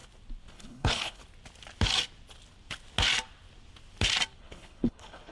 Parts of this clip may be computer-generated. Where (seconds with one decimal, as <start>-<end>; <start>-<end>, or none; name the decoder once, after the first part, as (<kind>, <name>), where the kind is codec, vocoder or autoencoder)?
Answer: 0.5-1.2 (codec, HILCodec); 4.4-5.3